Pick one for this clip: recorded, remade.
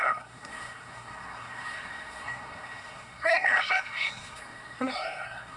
remade